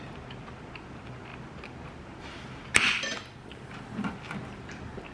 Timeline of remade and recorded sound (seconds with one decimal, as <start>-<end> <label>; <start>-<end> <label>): 0.0-5.1 recorded